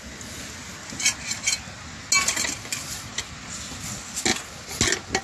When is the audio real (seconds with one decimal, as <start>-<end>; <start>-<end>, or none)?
0.0-5.2